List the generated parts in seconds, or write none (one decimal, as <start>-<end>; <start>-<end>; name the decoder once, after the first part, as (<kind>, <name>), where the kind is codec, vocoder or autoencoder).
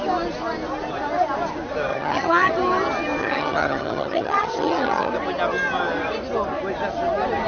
1.9-2.5 (vocoder, HiFi-GAN); 3.2-5.1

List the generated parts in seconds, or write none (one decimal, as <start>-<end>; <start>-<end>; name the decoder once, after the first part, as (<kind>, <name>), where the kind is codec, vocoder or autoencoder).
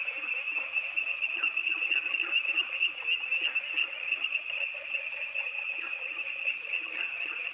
1.1-2.3 (vocoder, HiFi-GAN); 3.8-7.5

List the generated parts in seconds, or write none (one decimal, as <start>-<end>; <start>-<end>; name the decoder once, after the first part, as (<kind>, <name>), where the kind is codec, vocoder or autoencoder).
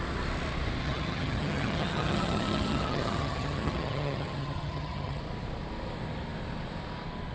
0.8-5.2 (vocoder, HiFi-GAN)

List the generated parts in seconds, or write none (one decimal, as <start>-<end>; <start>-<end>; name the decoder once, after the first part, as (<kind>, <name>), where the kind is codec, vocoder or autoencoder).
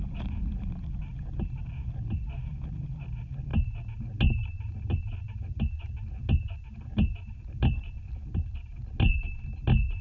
none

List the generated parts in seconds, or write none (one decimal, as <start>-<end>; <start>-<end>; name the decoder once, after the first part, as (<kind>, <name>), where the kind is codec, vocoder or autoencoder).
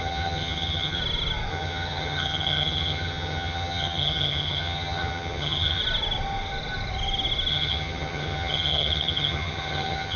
0.0-1.0 (vocoder, HiFi-GAN); 1.5-5.8; 7.5-10.2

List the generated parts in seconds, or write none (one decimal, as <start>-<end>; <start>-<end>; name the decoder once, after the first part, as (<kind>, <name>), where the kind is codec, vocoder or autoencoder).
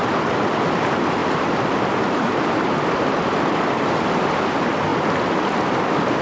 none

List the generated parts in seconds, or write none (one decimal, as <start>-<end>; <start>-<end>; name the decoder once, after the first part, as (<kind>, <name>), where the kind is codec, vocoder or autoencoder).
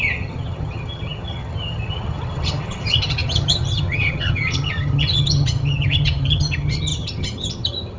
0.0-8.0 (vocoder, HiFi-GAN)